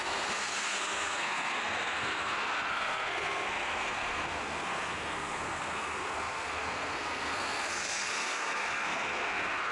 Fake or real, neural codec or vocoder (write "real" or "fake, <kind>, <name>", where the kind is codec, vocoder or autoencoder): fake, codec, SNAC